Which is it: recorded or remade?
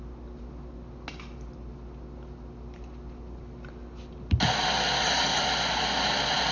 recorded